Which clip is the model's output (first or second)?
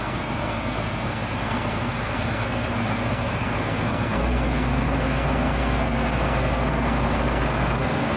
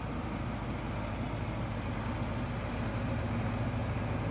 first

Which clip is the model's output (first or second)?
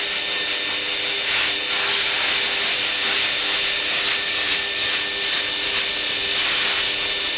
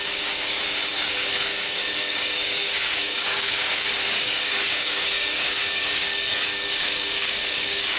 second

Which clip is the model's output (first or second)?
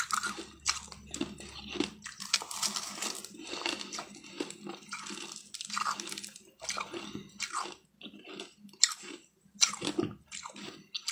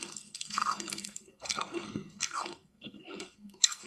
second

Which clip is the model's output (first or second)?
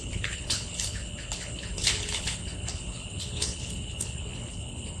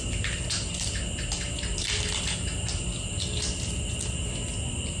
first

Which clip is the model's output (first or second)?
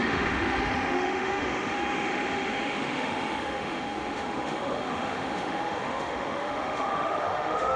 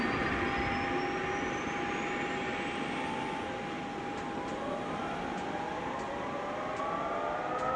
first